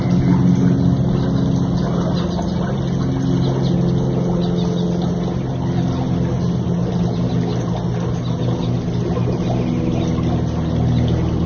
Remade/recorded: recorded